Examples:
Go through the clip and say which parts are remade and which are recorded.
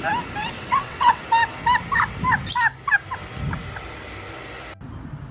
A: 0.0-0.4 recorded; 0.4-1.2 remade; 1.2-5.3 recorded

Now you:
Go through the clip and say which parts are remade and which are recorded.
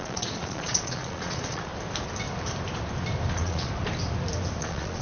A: 0.0-1.7 remade; 1.7-3.3 recorded; 3.3-3.7 remade; 3.7-4.6 recorded; 4.6-5.0 remade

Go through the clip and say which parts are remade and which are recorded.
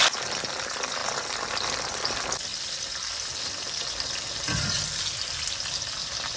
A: 0.0-6.4 recorded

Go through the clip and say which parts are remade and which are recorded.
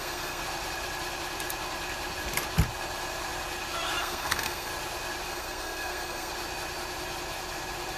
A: 0.0-0.4 remade; 0.4-4.0 recorded; 4.0-4.7 remade; 4.7-5.3 recorded; 5.3-6.3 remade; 6.3-8.0 recorded